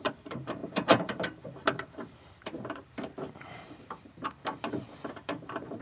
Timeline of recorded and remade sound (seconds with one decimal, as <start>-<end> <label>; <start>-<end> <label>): 0.0-5.8 remade